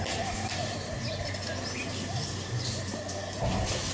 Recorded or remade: recorded